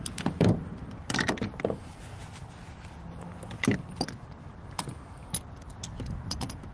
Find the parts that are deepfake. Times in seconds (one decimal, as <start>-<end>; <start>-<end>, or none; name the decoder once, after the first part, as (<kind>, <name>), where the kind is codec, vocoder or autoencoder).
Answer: 0.0-2.2 (vocoder, BigVGAN v2); 6.2-6.7